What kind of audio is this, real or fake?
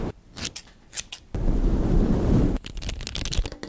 real